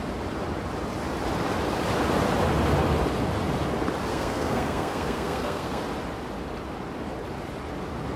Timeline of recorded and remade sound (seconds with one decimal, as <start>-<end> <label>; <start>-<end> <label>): 0.0-4.1 recorded; 4.1-5.8 remade; 5.8-8.2 recorded